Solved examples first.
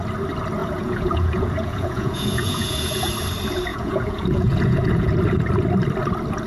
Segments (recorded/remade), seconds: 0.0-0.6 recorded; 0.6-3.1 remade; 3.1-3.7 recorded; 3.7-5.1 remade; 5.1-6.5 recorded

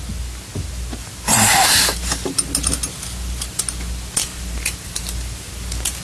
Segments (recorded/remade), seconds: 0.0-1.0 recorded; 1.0-3.6 remade; 3.6-4.3 recorded; 4.3-5.5 remade; 5.5-6.0 recorded

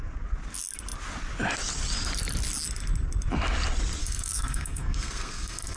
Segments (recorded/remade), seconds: 0.0-4.0 recorded; 4.0-5.8 remade

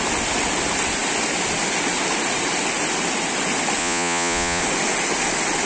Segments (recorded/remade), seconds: 0.0-3.8 recorded; 3.8-4.6 remade; 4.6-5.7 recorded